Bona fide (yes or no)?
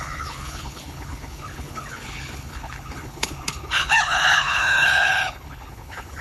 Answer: no